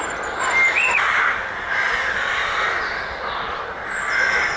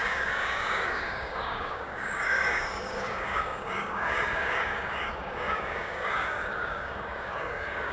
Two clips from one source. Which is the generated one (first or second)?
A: second